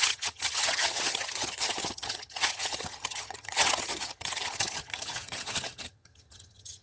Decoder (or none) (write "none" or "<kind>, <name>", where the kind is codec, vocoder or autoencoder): vocoder, HiFi-GAN